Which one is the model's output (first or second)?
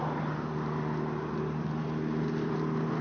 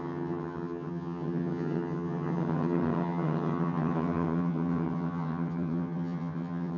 second